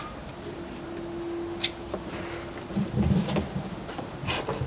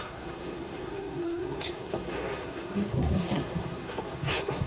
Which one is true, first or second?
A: first